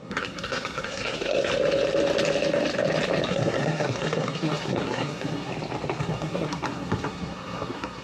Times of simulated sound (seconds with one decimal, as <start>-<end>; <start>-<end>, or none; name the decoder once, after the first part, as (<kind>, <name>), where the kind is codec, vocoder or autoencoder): 0.0-1.5 (codec, SNAC); 3.3-5.5; 6.0-8.0